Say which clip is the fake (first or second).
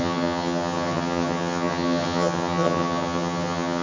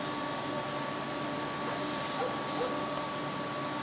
first